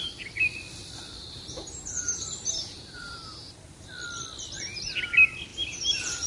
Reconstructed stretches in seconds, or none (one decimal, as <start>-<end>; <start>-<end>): 1.2-3.9; 5.5-6.3

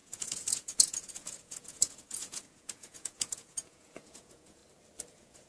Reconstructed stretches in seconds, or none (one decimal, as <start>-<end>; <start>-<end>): 0.0-4.6; 5.1-5.5

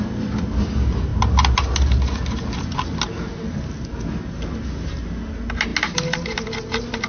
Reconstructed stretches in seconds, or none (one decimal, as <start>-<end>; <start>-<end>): none

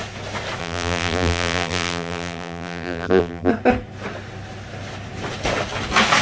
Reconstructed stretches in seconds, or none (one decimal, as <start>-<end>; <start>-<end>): 0.6-3.5

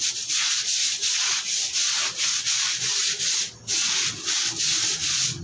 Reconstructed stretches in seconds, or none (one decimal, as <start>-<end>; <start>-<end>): none

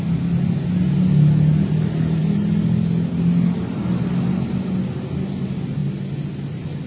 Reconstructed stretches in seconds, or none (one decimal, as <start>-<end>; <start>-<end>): none

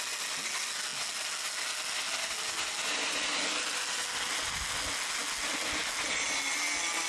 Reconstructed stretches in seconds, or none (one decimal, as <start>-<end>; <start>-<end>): none